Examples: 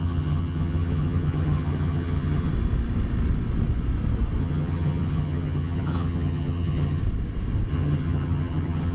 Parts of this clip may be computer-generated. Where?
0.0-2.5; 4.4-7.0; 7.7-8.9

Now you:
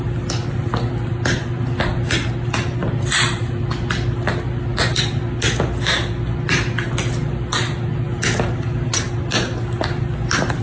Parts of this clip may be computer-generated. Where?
none

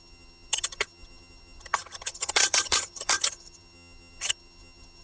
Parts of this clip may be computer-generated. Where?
0.0-5.0

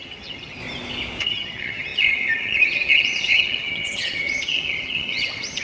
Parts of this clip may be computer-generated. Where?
0.0-0.6; 1.2-5.6

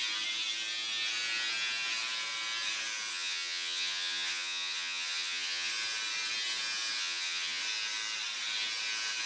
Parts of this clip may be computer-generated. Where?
3.1-5.7; 7.0-7.6

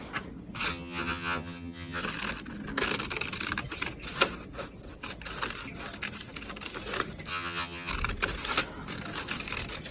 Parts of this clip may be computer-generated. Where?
0.7-2.0; 7.3-7.9

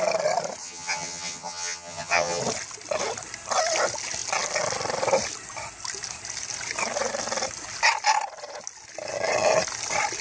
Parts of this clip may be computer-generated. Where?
0.6-2.4